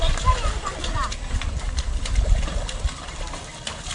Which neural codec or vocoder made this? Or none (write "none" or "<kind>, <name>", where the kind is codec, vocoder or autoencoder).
none